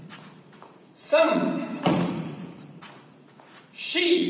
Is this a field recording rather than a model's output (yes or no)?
no